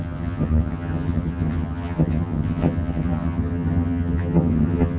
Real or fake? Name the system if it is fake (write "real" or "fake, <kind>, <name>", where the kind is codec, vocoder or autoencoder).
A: fake, vocoder, HiFi-GAN